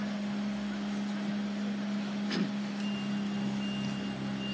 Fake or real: real